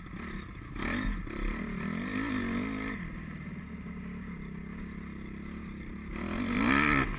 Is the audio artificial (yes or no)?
no